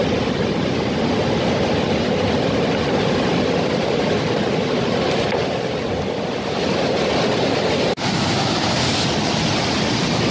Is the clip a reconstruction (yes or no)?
no